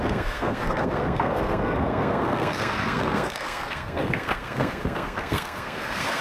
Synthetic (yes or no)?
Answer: yes